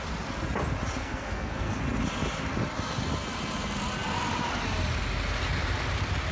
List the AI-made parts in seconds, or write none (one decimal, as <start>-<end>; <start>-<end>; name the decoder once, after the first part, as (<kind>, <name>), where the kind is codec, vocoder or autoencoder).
1.0-1.8 (codec, SNAC)